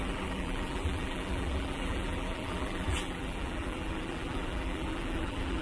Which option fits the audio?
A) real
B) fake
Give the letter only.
B